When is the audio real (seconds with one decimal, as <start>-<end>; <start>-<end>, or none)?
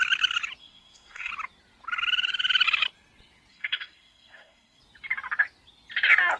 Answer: 0.0-0.6; 1.3-3.5; 4.8-6.4